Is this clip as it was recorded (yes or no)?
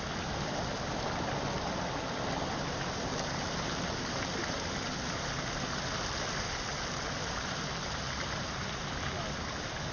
yes